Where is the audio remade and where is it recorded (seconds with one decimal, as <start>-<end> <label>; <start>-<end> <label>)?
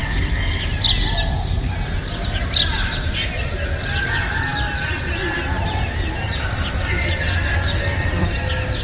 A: 0.0-8.8 recorded